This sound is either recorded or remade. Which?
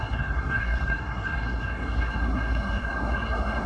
remade